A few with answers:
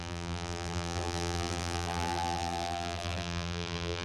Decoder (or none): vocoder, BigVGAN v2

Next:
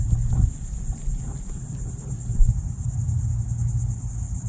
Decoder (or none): none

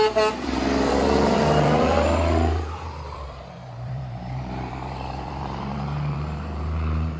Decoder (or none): vocoder, BigVGAN v2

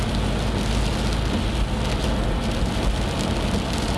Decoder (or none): none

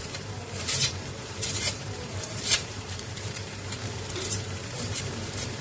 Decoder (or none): vocoder, BigVGAN v2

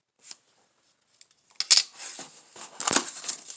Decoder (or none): none